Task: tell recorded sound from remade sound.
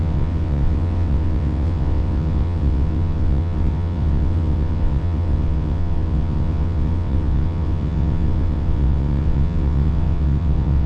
remade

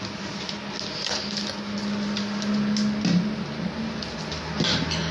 recorded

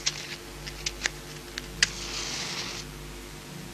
recorded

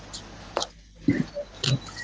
recorded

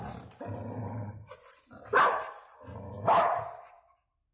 recorded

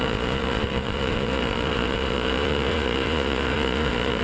remade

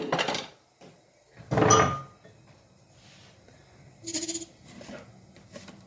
recorded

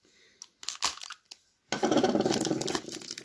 recorded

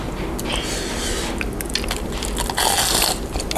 recorded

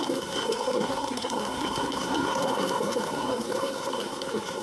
remade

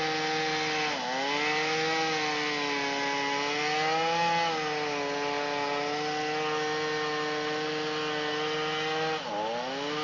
recorded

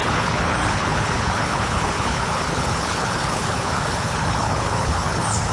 remade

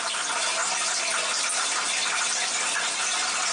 recorded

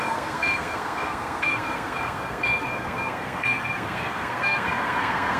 remade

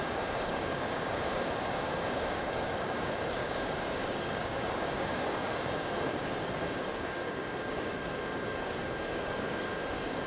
remade